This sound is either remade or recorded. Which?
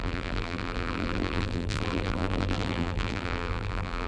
remade